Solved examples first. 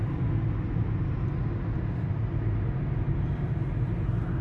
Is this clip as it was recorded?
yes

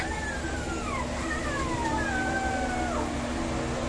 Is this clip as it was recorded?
yes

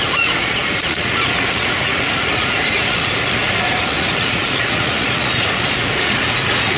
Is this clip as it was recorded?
no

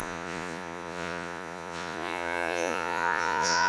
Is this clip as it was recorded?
no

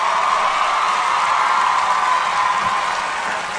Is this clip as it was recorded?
yes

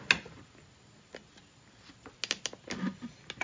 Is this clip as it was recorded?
yes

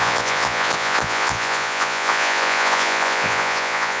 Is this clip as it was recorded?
no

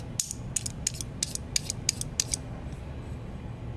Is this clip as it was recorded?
yes